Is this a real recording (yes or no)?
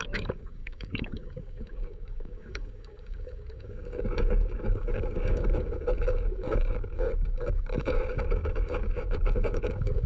no